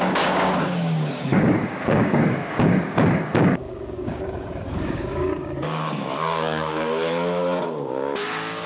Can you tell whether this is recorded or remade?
remade